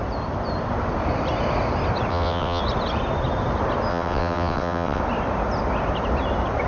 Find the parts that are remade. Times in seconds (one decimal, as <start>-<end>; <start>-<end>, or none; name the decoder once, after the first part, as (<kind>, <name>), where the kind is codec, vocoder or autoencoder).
2.1-2.6 (vocoder, WaveNeXt); 3.9-5.0